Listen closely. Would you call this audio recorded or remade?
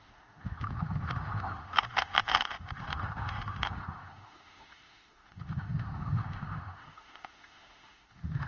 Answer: remade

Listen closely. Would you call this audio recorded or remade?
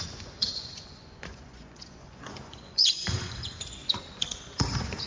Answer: remade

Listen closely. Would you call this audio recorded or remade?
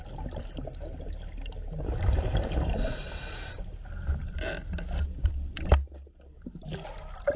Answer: recorded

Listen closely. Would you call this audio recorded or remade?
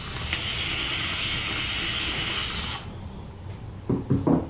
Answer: recorded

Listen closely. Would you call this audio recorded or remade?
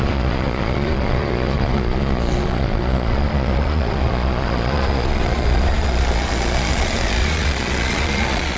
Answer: remade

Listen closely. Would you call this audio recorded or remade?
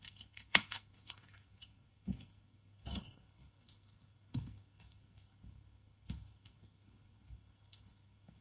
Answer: remade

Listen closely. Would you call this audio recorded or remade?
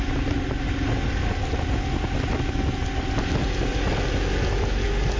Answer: recorded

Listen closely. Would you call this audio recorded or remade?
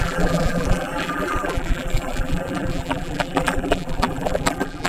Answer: remade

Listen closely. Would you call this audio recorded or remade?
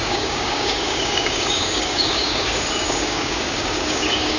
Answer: remade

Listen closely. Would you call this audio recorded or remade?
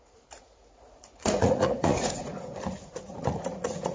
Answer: remade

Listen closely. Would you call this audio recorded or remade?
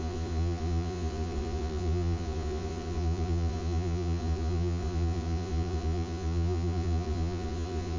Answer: remade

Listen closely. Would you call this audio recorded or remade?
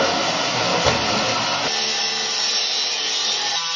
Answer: recorded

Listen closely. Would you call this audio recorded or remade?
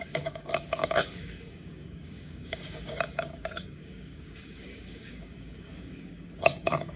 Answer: remade